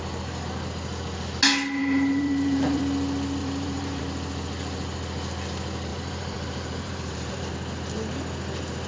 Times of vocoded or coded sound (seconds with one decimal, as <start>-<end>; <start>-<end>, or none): 1.8-2.8; 3.4-4.0; 5.9-7.5